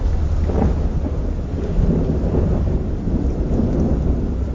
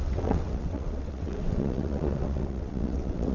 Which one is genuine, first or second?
first